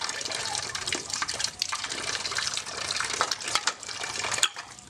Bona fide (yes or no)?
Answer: no